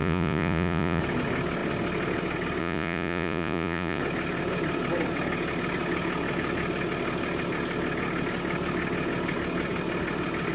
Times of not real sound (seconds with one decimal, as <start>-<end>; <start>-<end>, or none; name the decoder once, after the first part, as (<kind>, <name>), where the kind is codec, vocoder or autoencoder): 0.0-1.0 (vocoder, Vocos); 2.6-4.0